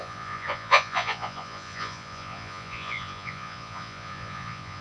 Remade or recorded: remade